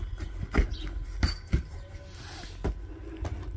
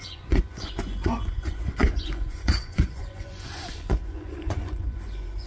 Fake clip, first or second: second